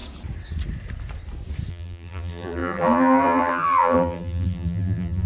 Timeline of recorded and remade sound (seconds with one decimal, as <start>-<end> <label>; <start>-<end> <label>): 0.0-1.7 recorded; 1.7-5.3 remade